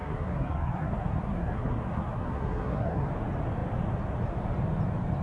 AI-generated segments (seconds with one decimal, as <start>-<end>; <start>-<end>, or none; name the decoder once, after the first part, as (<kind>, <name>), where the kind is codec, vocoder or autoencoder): 0.0-3.1 (codec, SNAC)